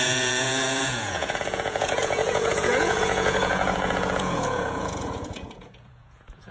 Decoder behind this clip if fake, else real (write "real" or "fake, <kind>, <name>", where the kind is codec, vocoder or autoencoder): fake, vocoder, Vocos